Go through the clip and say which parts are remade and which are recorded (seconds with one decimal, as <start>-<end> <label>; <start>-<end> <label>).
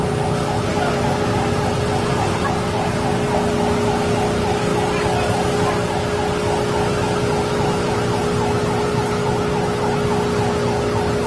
0.0-11.3 recorded